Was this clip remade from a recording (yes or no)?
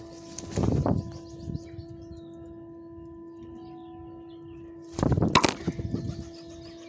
no